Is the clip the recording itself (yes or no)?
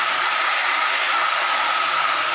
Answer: yes